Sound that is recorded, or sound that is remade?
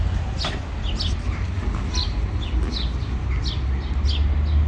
recorded